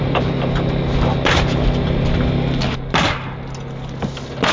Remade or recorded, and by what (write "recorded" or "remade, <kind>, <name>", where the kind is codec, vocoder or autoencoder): recorded